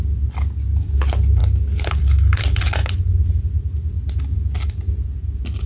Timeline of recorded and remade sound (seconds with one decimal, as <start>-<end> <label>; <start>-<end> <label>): 0.0-5.7 recorded